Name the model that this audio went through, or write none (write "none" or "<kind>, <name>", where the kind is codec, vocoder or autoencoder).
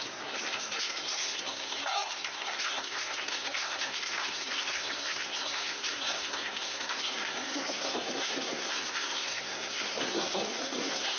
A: codec, SNAC